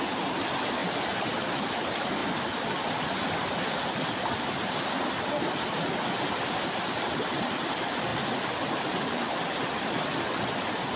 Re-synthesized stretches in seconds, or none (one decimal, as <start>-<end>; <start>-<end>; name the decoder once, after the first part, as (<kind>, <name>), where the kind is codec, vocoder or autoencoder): none